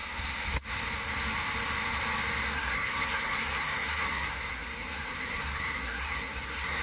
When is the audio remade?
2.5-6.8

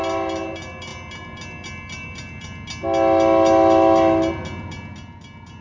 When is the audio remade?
none

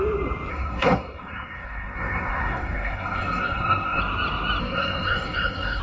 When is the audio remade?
0.5-4.0; 4.6-5.8